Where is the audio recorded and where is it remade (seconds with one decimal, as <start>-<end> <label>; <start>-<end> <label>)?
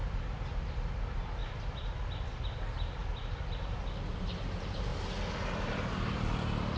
0.0-0.9 recorded; 0.9-1.4 remade; 1.4-2.4 recorded; 2.4-3.0 remade; 3.0-3.6 recorded; 3.6-4.9 remade; 4.9-5.6 recorded; 5.6-6.8 remade